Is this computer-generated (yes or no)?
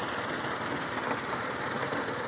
no